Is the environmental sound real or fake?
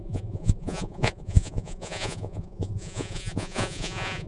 fake